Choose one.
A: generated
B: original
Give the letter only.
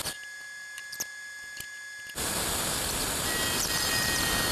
B